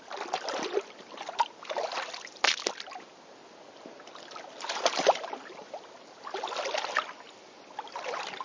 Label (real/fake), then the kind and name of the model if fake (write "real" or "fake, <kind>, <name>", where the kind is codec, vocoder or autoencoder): real